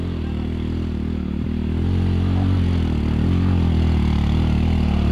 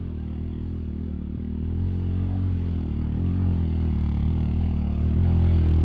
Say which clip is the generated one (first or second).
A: second